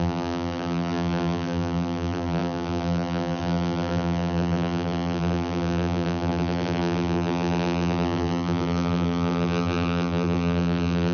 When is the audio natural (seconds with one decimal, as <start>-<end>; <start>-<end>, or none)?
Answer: none